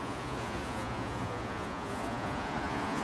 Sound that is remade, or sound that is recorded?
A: remade